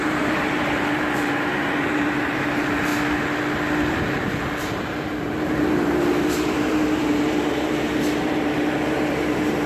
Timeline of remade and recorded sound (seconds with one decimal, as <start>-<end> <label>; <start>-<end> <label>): 0.0-2.9 remade; 2.9-3.9 recorded; 3.9-9.7 remade